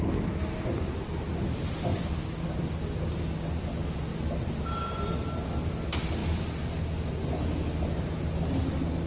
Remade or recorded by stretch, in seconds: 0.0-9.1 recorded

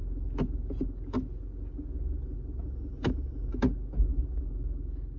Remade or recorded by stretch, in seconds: 0.0-5.2 recorded